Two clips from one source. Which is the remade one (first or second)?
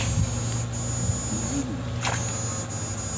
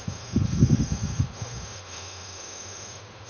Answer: second